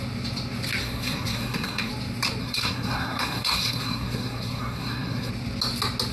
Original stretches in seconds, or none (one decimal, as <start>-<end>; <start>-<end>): 0.0-0.8; 1.9-2.4; 5.3-6.1